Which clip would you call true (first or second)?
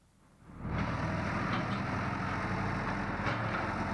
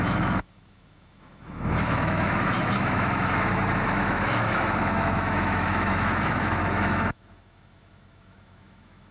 first